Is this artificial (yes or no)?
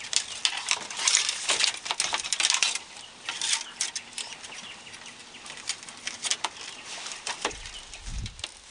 no